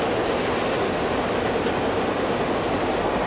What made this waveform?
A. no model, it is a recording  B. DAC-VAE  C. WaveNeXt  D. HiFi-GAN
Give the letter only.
A